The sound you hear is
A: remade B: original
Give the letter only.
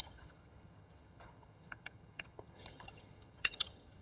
A